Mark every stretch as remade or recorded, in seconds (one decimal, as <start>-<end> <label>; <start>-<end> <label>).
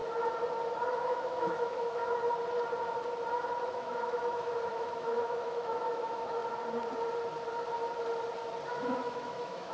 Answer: 0.0-0.9 recorded; 0.9-2.0 remade; 2.0-3.7 recorded; 3.7-6.4 remade; 6.4-8.8 recorded; 8.8-9.7 remade